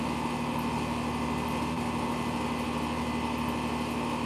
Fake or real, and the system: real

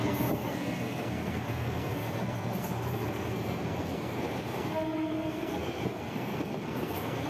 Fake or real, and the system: fake, codec, SNAC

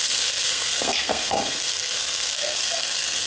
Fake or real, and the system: fake, codec, SNAC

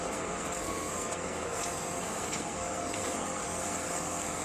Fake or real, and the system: fake, codec, SNAC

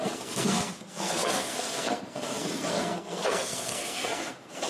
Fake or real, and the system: fake, codec, SNAC